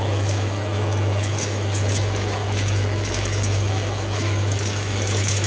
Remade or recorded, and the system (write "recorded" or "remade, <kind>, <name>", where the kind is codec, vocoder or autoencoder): remade, autoencoder, DAC-VAE